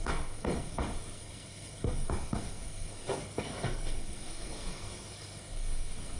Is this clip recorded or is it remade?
remade